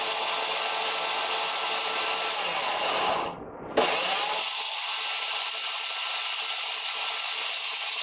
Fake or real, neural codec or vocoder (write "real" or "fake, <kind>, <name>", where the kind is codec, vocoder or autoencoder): real